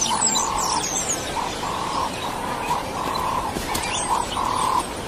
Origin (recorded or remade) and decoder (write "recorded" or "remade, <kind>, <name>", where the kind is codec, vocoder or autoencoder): remade, vocoder, BigVGAN v2